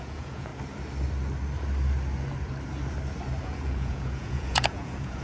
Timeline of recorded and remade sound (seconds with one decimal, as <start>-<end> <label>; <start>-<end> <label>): 0.0-0.5 remade; 0.5-3.4 recorded; 3.4-5.2 remade